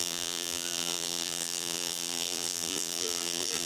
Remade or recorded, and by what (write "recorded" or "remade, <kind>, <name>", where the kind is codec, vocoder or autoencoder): remade, vocoder, BigVGAN v2